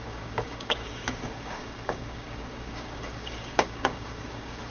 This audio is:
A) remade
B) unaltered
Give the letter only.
A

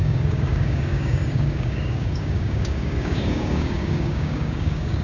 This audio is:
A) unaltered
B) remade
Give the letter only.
B